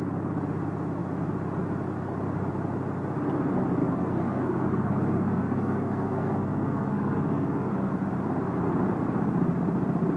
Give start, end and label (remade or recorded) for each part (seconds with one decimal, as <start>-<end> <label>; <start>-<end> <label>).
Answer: 0.0-3.8 recorded; 3.8-7.9 remade; 7.9-10.2 recorded